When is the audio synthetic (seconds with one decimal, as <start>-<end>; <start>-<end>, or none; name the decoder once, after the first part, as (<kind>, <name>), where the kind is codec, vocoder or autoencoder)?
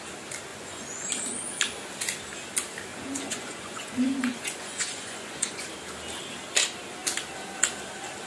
0.5-1.1 (vocoder, Vocos); 2.9-5.7